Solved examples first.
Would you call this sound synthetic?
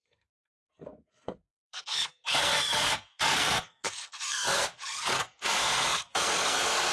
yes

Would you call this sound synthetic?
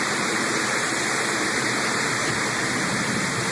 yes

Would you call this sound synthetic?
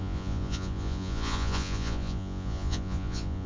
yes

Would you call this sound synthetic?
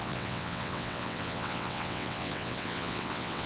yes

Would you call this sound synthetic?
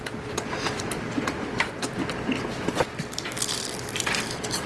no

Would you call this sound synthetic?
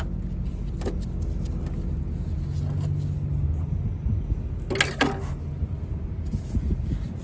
no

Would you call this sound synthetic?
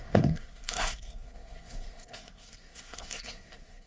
yes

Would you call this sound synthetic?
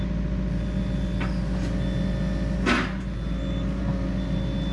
no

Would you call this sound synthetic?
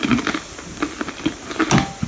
no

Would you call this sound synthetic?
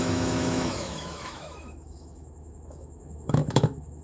yes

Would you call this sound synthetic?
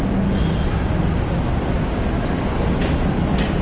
no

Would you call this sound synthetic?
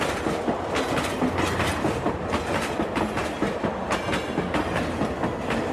no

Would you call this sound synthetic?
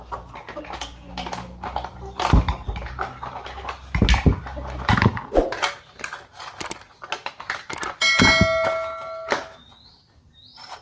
no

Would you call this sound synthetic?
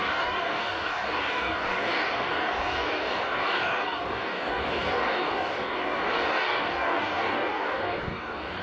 yes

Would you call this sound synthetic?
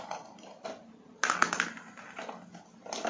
no